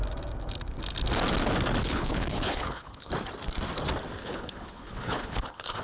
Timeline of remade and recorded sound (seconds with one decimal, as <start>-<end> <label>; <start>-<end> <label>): 0.0-1.8 recorded; 1.8-3.1 remade; 3.1-4.2 recorded; 4.2-5.8 remade